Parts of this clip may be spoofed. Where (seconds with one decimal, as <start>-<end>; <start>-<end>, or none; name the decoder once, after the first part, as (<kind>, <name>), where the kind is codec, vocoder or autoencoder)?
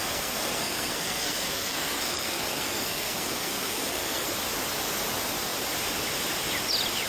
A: 0.0-4.3 (codec, SNAC)